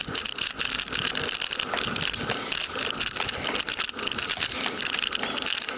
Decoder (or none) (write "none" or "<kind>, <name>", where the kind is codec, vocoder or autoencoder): none